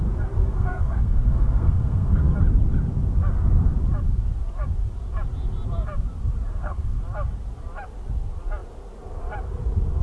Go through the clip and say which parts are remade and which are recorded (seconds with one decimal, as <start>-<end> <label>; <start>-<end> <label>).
0.0-0.4 recorded; 0.4-2.2 remade; 2.2-6.5 recorded; 6.5-7.0 remade; 7.0-10.0 recorded